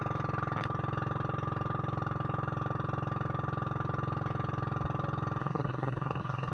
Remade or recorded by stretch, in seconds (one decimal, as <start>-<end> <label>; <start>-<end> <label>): 0.0-5.4 recorded; 5.4-6.5 remade